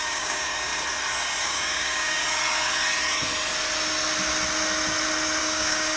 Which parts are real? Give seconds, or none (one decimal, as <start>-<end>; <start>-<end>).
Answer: 0.7-1.4; 2.2-5.4